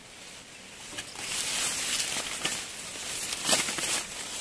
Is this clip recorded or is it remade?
recorded